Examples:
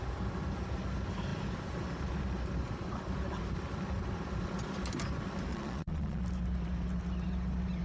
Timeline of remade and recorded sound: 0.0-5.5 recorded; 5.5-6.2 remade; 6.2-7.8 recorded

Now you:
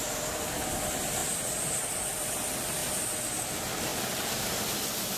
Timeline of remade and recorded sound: 0.0-1.2 recorded; 1.2-2.3 remade; 2.3-2.8 recorded; 2.8-3.3 remade; 3.3-3.9 recorded; 3.9-4.6 remade; 4.6-5.2 recorded